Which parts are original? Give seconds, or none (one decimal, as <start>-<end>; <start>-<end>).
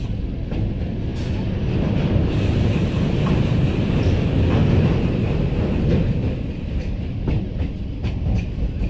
0.0-4.6; 5.1-8.0